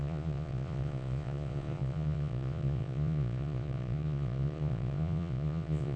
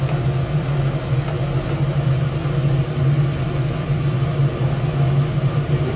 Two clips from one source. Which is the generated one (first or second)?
first